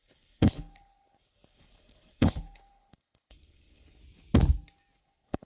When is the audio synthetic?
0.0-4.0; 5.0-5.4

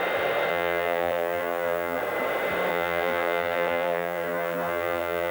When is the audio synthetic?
0.5-2.0; 2.7-5.3

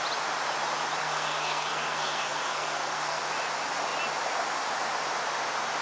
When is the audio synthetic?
1.0-3.2